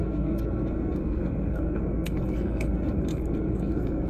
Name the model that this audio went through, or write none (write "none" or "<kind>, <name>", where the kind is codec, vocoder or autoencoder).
codec, SNAC